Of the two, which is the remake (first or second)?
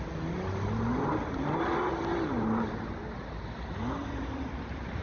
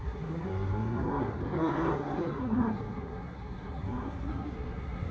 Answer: second